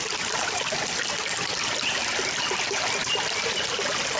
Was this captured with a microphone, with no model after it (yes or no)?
yes